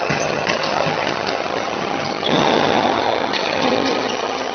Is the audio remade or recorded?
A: remade